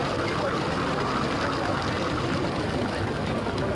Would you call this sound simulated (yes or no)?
no